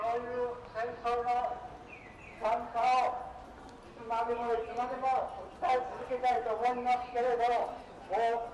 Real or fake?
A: real